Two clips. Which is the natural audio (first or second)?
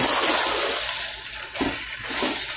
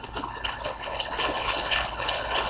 first